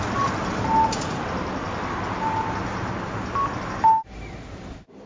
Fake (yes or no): no